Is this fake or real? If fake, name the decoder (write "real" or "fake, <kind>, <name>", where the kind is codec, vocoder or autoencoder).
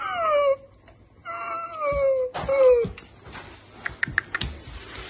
real